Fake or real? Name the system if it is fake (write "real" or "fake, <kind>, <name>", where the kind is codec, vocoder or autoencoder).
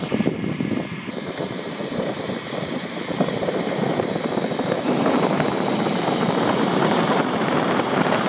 fake, vocoder, BigVGAN v2